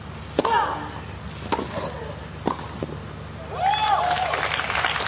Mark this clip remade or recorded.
recorded